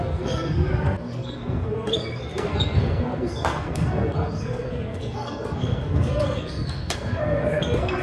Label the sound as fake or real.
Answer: fake